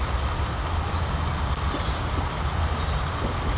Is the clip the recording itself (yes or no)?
yes